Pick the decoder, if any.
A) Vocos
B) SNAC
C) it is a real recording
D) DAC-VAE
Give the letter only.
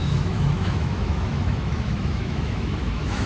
D